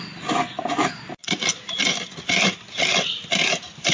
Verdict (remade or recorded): remade